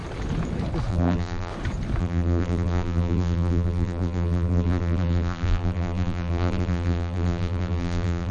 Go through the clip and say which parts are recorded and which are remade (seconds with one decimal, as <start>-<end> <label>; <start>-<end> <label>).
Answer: 0.0-0.9 recorded; 0.9-1.5 remade; 1.5-2.0 recorded; 2.0-8.3 remade

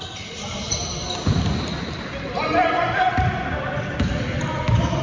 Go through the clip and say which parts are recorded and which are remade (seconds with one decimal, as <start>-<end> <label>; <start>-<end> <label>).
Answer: 0.0-5.0 recorded

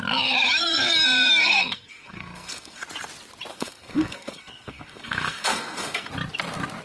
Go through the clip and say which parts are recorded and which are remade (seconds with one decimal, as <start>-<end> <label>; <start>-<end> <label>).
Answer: 0.0-1.4 recorded; 1.4-2.8 remade; 2.8-3.5 recorded; 3.5-6.1 remade; 6.1-6.8 recorded

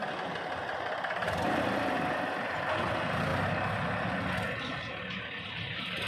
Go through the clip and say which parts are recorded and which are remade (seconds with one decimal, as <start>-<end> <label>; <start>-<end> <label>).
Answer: 0.0-6.1 recorded

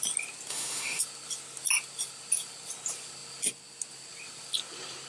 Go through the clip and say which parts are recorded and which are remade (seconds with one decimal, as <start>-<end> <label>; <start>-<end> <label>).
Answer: 0.0-0.5 recorded; 0.5-1.0 remade; 1.0-5.1 recorded